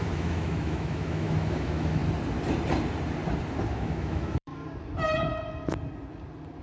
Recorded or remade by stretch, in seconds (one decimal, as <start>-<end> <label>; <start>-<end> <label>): 0.0-2.0 remade; 2.0-3.7 recorded; 3.7-4.5 remade; 4.5-6.6 recorded